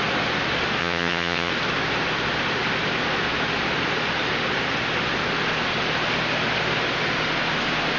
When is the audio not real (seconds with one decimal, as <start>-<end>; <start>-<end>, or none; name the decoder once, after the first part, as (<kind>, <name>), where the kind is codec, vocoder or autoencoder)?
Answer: 0.8-1.5 (vocoder, HiFi-GAN)